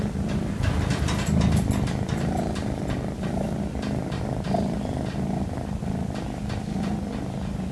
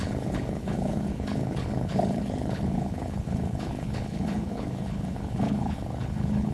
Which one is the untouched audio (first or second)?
first